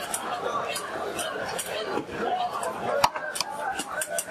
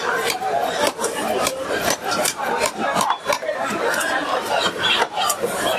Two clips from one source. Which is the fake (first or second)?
second